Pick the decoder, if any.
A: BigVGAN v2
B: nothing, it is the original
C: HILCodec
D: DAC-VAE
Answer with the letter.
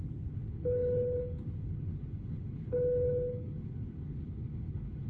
C